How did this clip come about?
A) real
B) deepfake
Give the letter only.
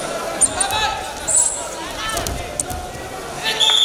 A